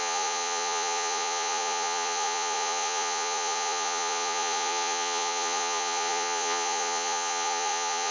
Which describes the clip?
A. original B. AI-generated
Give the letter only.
B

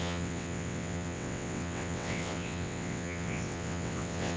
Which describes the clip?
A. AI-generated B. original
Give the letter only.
A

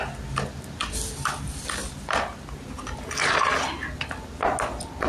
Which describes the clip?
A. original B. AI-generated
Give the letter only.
A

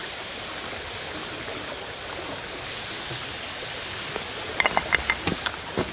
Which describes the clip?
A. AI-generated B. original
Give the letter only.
B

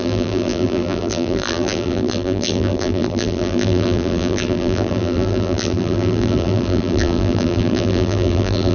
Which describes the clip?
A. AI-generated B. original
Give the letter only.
A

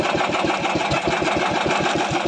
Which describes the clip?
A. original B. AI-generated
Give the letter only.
A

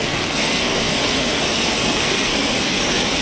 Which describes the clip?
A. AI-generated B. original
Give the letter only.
A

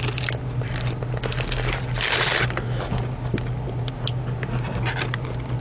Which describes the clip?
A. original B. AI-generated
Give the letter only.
A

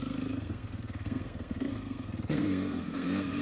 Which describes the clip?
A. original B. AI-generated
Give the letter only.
B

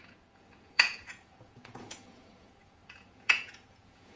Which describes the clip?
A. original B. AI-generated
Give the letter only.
B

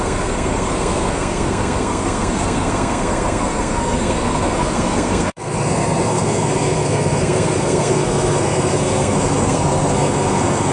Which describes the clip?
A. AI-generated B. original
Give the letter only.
A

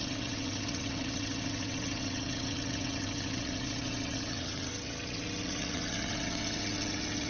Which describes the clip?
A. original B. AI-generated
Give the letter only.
B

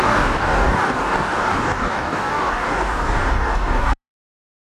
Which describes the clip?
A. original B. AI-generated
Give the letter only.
B